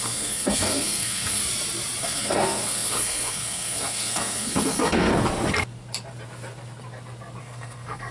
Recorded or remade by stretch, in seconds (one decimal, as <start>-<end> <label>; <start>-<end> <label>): 0.0-1.4 remade; 1.4-2.0 recorded; 2.0-5.1 remade; 5.1-7.4 recorded; 7.4-8.1 remade